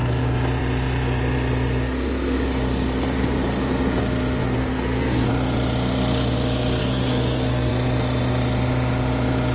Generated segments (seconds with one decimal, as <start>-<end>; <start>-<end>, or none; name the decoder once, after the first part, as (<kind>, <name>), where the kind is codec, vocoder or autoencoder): 4.4-5.3 (codec, SNAC); 6.8-7.7